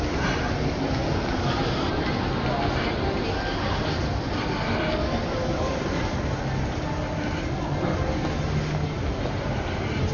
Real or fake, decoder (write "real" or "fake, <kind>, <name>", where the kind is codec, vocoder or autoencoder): real